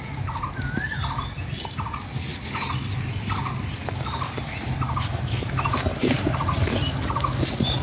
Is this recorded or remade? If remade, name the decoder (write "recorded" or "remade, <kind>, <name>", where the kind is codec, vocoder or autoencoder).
recorded